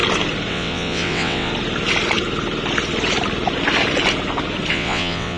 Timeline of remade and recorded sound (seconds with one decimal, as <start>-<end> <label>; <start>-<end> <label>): 0.0-0.5 recorded; 0.5-1.5 remade; 1.5-4.7 recorded; 4.7-5.4 remade